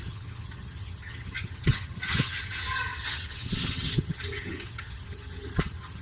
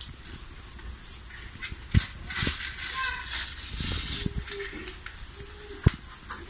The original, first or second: second